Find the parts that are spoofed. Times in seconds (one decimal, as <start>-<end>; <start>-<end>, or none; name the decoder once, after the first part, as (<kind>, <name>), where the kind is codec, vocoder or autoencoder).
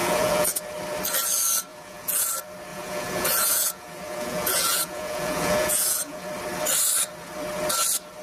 0.0-0.6 (vocoder, Vocos); 1.7-2.3; 2.7-6.2